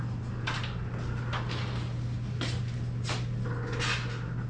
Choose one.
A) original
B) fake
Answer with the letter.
A